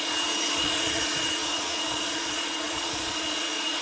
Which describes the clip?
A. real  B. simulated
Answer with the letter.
B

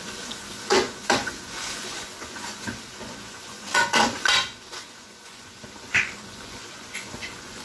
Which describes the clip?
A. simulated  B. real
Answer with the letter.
A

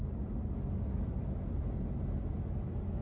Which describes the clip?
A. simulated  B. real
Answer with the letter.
B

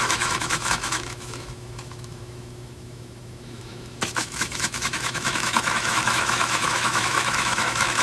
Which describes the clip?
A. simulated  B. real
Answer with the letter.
A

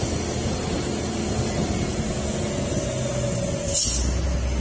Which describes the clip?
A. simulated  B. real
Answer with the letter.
B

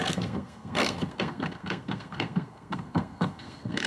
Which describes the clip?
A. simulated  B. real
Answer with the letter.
A